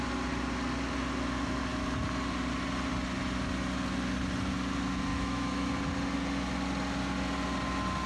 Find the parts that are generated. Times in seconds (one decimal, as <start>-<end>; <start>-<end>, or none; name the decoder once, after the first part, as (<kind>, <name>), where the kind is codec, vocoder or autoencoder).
5.1-5.7 (autoencoder, DAC-VAE)